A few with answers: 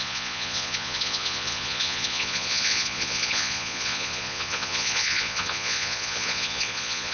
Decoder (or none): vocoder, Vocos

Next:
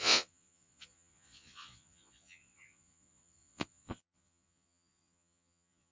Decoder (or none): vocoder, Vocos